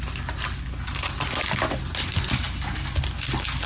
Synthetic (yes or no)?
no